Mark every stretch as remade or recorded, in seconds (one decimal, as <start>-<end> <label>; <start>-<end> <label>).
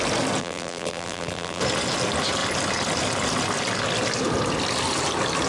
0.0-0.4 recorded; 0.4-1.6 remade; 1.6-5.5 recorded